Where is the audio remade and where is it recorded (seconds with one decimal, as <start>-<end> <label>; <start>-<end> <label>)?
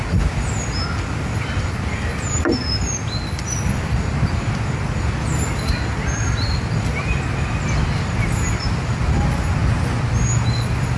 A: 0.0-11.0 recorded